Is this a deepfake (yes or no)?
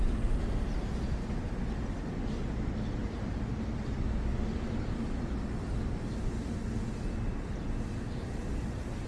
no